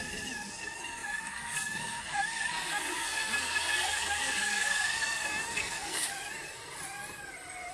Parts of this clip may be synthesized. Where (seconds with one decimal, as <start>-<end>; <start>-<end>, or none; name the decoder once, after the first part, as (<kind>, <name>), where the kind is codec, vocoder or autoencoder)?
0.0-6.1 (codec, SNAC)